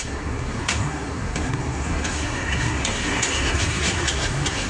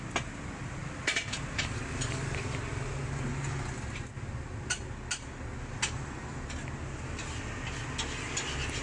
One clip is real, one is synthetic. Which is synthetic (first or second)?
first